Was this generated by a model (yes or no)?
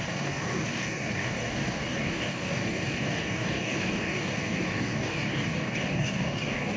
yes